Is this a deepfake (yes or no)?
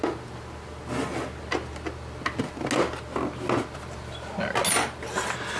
no